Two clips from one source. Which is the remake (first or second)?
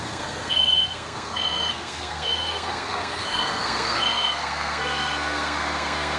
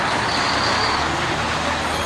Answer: first